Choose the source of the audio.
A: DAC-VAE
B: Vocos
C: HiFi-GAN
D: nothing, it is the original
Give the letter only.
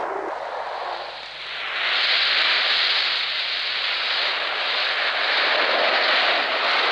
D